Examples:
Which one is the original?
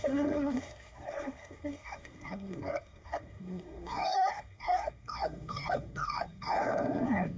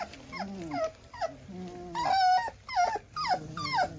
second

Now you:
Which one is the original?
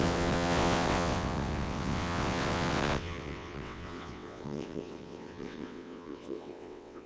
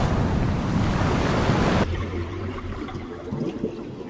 second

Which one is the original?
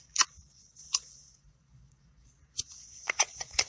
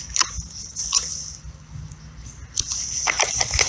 second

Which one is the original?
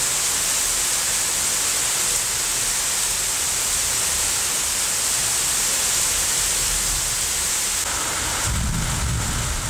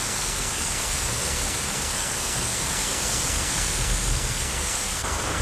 first